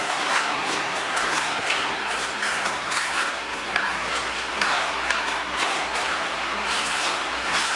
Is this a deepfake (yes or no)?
yes